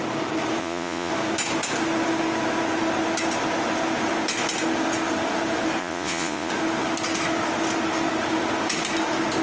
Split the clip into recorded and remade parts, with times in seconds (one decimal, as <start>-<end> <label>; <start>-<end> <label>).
0.0-0.6 recorded; 0.6-1.1 remade; 1.1-5.8 recorded; 5.8-6.5 remade; 6.5-9.4 recorded